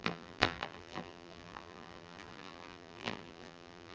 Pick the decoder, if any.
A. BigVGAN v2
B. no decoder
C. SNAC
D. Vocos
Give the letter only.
A